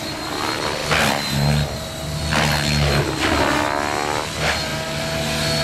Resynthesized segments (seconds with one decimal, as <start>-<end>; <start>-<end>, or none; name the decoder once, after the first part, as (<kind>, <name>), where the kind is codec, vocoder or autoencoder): none